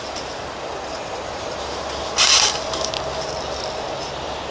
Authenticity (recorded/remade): recorded